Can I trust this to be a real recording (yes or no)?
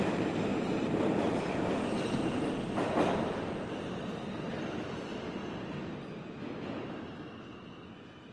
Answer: yes